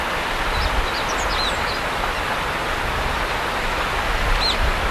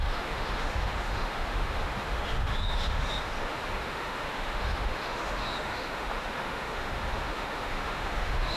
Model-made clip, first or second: second